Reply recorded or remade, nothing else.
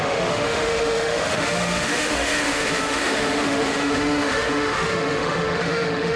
remade